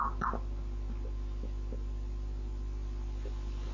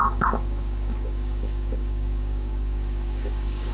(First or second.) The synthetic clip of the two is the second